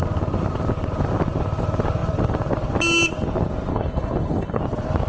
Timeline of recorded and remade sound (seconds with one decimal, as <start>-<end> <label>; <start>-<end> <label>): 0.0-3.7 recorded; 3.7-4.6 remade; 4.6-5.1 recorded

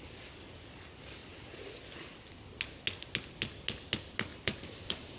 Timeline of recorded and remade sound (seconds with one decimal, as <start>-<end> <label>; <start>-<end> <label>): 0.0-4.3 recorded; 4.3-5.2 remade